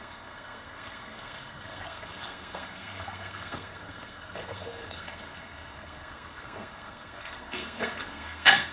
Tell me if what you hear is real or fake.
fake